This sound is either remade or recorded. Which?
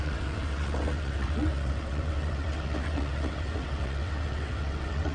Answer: remade